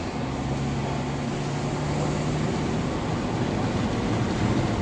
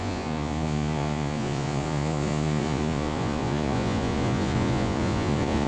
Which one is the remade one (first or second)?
second